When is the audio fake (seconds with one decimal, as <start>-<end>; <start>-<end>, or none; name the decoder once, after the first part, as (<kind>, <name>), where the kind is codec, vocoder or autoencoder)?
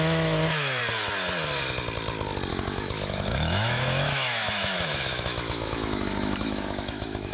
0.0-0.8 (autoencoder, DAC-VAE); 2.5-7.3